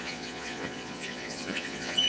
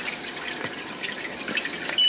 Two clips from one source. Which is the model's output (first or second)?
first